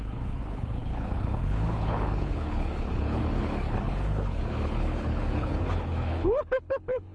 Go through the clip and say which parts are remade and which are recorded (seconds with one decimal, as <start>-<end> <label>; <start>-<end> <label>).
0.0-7.1 remade